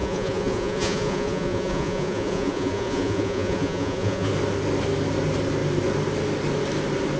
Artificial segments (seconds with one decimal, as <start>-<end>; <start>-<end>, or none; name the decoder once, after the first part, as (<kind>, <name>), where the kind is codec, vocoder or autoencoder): 0.0-4.3 (vocoder, Vocos)